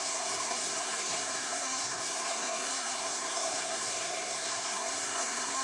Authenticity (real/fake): fake